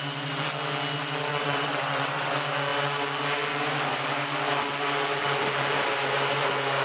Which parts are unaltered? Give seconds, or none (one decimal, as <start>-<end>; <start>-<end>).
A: 0.0-1.3; 2.3-6.8